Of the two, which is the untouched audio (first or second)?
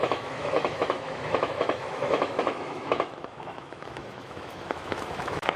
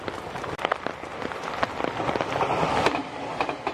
second